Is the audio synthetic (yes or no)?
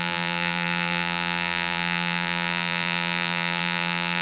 yes